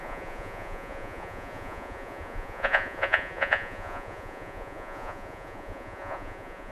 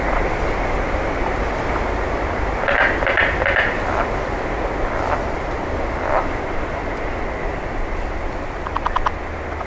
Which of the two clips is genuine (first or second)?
second